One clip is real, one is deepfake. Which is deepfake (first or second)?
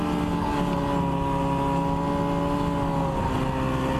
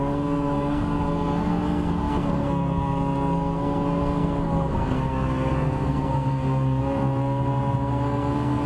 second